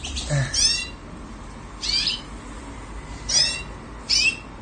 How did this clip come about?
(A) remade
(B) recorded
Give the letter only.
B